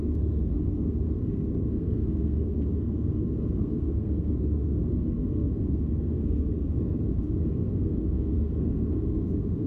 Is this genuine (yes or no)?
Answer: no